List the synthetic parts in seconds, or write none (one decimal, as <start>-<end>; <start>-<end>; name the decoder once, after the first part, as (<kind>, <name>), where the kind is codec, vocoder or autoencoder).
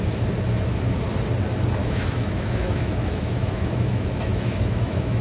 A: 1.8-5.2 (autoencoder, DAC-VAE)